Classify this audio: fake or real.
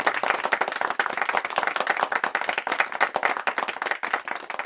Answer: real